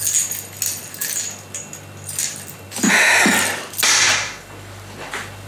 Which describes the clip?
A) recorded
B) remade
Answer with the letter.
A